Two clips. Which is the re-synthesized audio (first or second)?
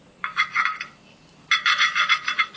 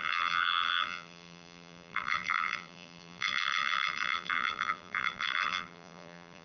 second